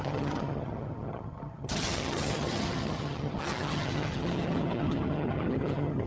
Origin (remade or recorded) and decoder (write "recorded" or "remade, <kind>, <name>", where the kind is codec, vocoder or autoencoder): remade, vocoder, HiFi-GAN